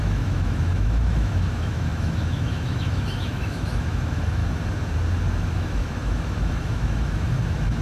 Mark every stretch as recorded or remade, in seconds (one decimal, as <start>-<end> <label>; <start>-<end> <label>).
0.0-4.4 remade; 4.4-5.4 recorded; 5.4-7.8 remade